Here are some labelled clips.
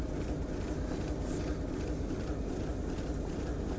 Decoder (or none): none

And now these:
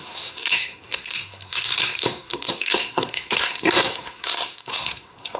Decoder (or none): codec, SNAC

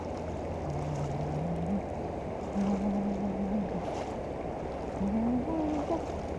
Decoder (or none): none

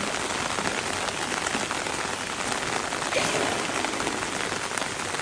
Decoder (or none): none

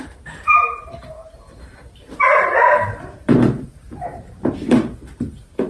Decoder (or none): vocoder, BigVGAN v2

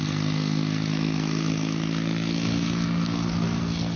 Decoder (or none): codec, SNAC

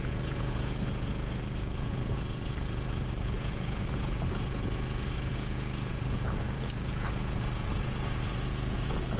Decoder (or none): vocoder, Vocos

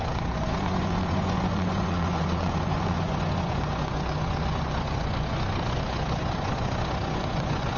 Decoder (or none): vocoder, Vocos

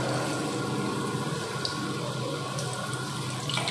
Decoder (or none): none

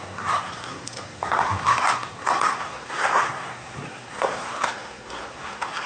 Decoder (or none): codec, SNAC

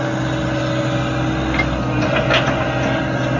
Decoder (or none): none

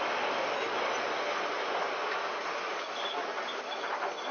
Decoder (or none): none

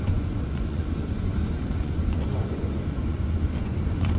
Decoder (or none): vocoder, Vocos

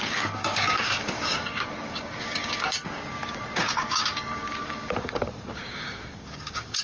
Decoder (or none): codec, DAC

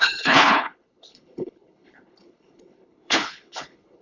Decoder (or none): codec, HILCodec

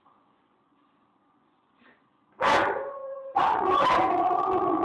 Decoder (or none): vocoder, Vocos